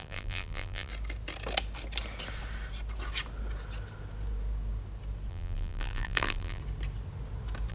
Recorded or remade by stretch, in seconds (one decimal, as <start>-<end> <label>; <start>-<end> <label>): 0.0-0.9 remade; 0.9-5.3 recorded; 5.3-6.6 remade; 6.6-7.7 recorded